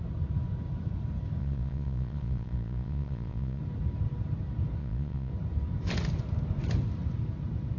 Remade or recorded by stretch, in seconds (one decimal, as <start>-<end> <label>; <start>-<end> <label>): 0.0-1.4 recorded; 1.4-3.6 remade; 3.6-4.8 recorded; 4.8-5.3 remade; 5.3-7.8 recorded